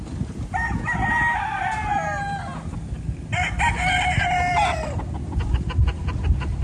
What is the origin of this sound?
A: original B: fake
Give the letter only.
A